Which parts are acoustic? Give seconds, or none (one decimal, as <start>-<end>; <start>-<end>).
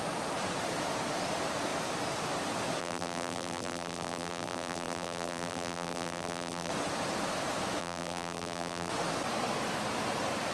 0.0-2.8; 6.7-7.8; 8.9-10.5